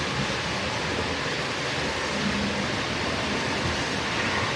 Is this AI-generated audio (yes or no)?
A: no